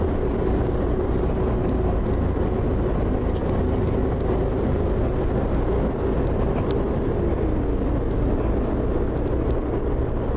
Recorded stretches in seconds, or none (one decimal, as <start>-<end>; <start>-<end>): 0.0-10.4